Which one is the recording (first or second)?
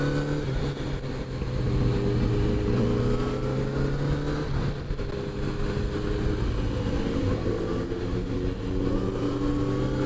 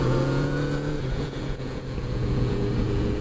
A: first